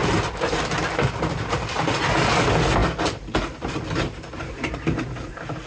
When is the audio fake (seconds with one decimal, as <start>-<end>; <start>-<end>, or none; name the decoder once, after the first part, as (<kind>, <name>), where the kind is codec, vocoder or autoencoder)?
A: 0.0-0.6 (vocoder, BigVGAN v2); 2.8-5.7

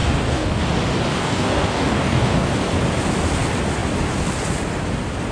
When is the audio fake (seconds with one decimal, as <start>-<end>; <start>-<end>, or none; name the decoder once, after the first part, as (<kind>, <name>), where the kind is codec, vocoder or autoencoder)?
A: 0.0-0.6 (codec, DAC); 1.1-2.5